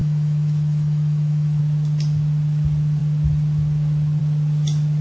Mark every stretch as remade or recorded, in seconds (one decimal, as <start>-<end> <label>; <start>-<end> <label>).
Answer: 0.0-1.6 remade; 1.6-5.0 recorded